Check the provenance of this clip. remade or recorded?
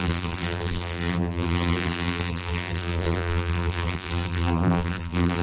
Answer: remade